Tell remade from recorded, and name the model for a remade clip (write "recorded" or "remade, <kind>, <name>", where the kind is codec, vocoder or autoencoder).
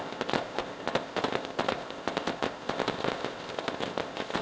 remade, codec, ZipCodec